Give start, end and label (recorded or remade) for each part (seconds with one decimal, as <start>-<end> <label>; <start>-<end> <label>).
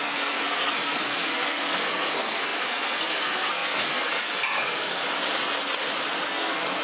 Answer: 0.0-5.0 remade; 5.0-6.2 recorded; 6.2-6.8 remade